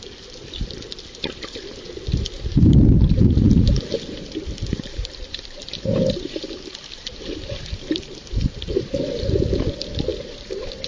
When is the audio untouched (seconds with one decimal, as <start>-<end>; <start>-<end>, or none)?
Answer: 0.0-4.7; 9.7-10.1